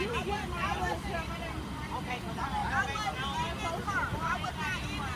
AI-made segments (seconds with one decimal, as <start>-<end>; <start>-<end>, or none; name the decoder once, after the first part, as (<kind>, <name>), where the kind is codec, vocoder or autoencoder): 0.0-2.6 (vocoder, BigVGAN v2); 3.9-5.2